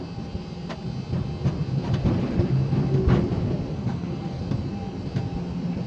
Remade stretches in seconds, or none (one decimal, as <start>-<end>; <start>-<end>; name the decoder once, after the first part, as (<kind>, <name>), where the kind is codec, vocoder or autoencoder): 3.7-4.4 (codec, SNAC)